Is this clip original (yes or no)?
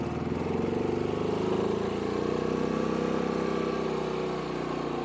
yes